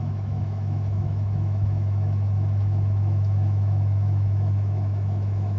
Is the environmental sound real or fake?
fake